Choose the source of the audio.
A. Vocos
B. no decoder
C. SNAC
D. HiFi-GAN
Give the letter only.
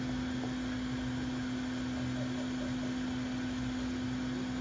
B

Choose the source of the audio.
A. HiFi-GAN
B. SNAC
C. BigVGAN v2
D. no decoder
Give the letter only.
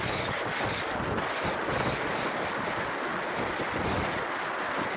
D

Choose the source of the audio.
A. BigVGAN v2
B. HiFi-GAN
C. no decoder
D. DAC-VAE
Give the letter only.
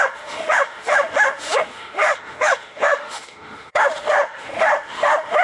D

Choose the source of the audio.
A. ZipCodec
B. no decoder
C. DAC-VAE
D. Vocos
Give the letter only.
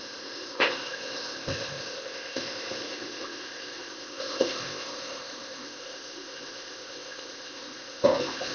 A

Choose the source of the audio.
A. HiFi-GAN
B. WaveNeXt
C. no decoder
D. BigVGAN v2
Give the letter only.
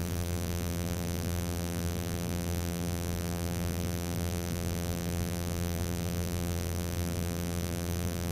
D